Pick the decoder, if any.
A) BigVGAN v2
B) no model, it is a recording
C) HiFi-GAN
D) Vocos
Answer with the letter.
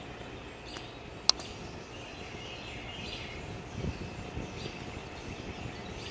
B